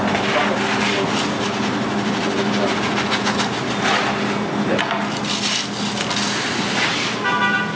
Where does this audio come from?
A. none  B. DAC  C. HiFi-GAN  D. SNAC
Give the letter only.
A